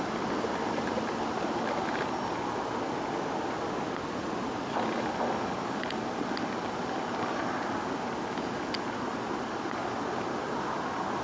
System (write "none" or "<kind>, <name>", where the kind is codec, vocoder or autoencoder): none